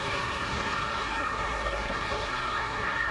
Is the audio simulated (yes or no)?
yes